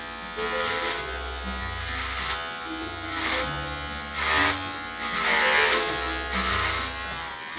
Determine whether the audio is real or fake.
real